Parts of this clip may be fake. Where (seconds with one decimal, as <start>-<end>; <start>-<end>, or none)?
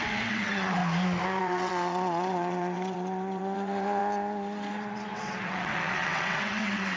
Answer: 0.0-0.8; 1.4-4.0; 4.7-7.0